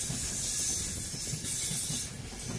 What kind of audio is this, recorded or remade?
recorded